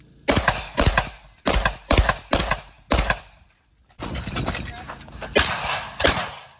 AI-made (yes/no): no